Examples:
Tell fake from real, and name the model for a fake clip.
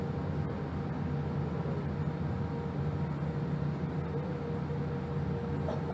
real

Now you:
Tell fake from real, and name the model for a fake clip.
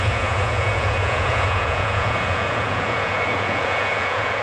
fake, vocoder, Vocos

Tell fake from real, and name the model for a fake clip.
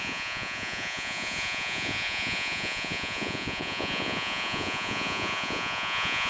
fake, vocoder, Vocos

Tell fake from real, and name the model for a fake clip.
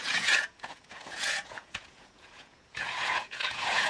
fake, vocoder, Vocos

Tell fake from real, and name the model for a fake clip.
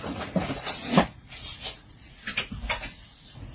fake, vocoder, Vocos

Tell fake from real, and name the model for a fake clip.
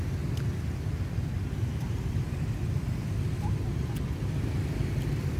real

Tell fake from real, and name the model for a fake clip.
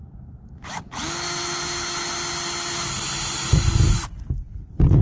real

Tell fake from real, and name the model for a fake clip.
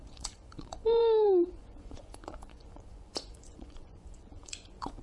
fake, vocoder, Vocos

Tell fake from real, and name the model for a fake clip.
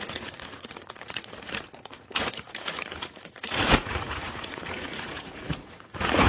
fake, vocoder, Vocos